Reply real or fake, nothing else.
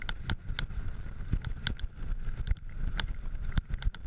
real